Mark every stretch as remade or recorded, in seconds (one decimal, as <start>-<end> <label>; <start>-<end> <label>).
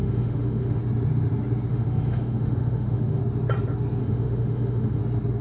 0.0-0.8 remade; 0.8-1.7 recorded; 1.7-3.2 remade; 3.2-4.0 recorded; 4.0-5.0 remade; 5.0-5.4 recorded